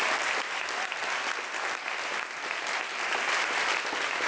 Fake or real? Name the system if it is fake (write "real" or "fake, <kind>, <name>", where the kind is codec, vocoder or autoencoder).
real